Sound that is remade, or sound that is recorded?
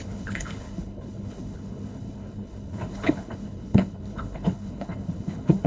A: remade